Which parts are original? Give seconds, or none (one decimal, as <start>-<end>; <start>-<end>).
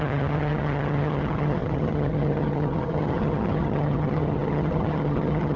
none